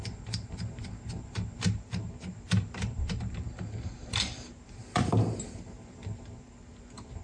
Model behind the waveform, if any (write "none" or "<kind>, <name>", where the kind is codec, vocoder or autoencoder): vocoder, BigVGAN v2